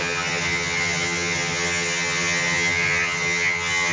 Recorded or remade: remade